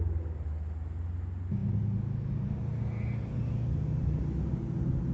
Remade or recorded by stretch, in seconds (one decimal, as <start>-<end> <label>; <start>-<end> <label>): 0.0-5.1 recorded